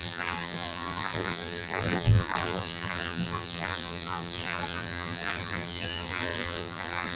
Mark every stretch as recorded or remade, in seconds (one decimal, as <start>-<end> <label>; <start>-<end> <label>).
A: 0.0-7.2 remade